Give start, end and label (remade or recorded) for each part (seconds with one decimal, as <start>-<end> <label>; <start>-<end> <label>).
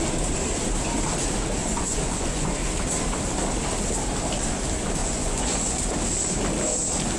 0.0-1.6 recorded; 1.6-2.5 remade; 2.5-5.0 recorded; 5.0-5.8 remade; 5.8-7.2 recorded